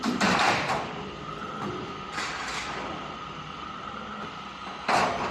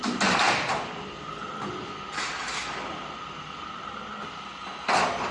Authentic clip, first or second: second